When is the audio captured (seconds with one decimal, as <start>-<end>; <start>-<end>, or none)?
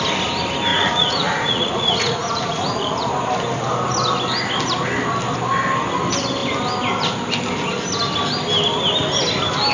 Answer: 0.0-0.7; 3.1-9.7